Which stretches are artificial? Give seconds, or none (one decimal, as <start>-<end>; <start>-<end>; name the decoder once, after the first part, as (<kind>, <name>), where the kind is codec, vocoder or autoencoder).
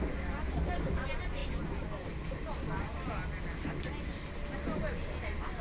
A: none